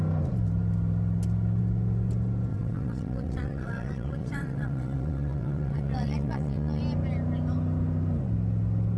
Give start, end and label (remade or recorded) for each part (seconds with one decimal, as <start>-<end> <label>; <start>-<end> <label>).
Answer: 0.0-2.5 recorded; 2.5-6.8 remade; 6.8-9.0 recorded